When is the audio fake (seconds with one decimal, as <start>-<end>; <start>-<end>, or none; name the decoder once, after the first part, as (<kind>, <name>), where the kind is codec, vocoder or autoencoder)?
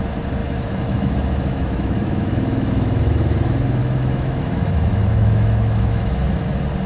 0.4-3.3 (autoencoder, DAC-VAE); 3.8-6.2